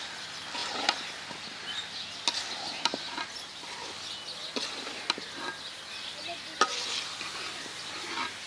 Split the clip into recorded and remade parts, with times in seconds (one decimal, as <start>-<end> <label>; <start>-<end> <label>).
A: 0.0-8.5 recorded